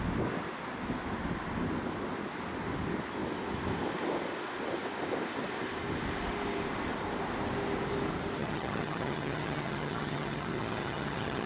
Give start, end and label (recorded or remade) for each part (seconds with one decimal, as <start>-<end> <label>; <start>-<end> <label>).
0.0-8.4 recorded; 8.4-11.5 remade